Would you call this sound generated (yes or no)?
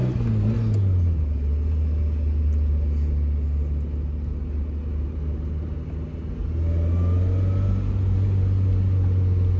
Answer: no